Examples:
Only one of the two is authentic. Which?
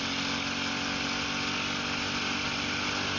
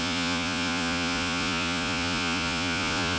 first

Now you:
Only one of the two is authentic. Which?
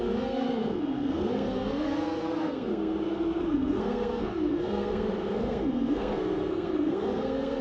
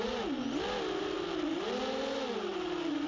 second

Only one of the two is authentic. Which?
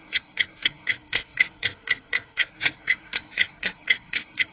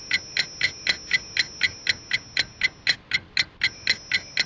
second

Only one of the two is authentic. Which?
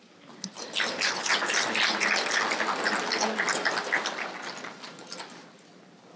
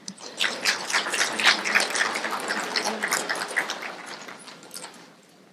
first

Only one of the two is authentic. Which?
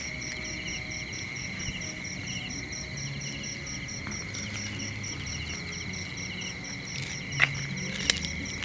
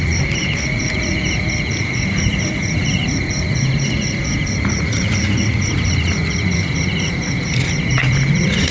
first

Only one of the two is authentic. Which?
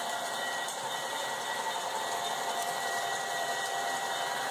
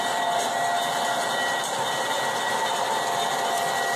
second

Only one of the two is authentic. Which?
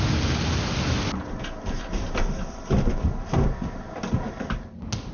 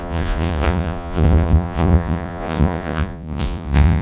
first